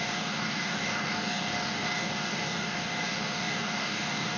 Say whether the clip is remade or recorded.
remade